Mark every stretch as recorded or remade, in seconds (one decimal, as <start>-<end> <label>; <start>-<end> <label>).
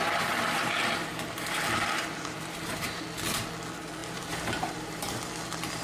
0.0-1.0 recorded; 1.0-3.0 remade; 3.0-4.0 recorded; 4.0-5.2 remade; 5.2-5.8 recorded